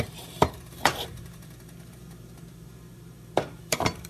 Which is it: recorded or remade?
remade